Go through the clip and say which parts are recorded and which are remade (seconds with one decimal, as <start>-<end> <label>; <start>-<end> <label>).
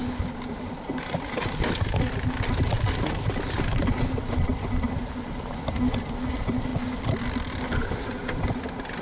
0.0-9.0 recorded